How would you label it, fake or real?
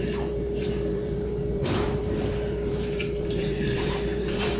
fake